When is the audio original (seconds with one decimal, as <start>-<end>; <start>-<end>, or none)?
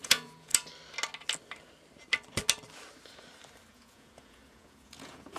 0.5-3.7